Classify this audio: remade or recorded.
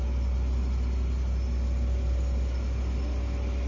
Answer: recorded